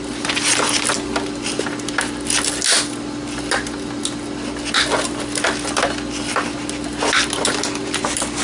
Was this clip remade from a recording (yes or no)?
no